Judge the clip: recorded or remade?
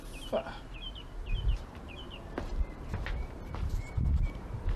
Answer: remade